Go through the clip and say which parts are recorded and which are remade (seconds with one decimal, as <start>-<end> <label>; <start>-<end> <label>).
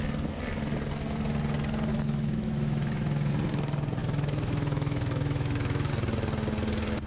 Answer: 0.0-1.9 recorded; 1.9-3.3 remade; 3.3-4.0 recorded; 4.0-5.9 remade; 5.9-7.1 recorded